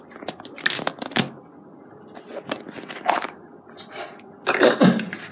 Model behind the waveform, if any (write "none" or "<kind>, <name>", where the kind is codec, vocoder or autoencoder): none